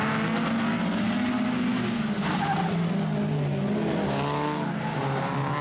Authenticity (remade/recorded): recorded